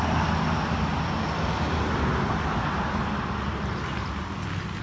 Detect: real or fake real